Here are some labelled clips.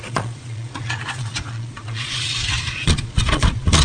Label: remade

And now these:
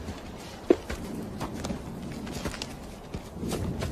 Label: recorded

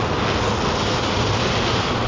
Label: recorded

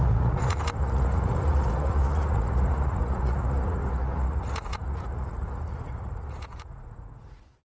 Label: remade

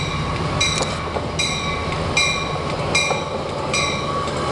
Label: recorded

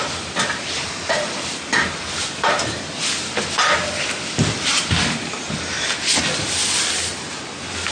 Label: recorded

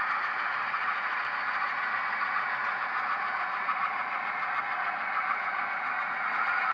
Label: remade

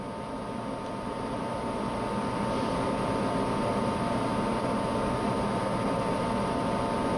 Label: recorded